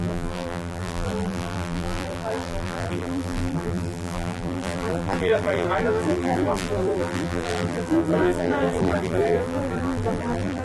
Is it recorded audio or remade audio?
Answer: remade